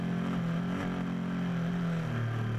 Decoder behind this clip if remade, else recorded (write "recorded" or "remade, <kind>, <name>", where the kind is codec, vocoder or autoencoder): recorded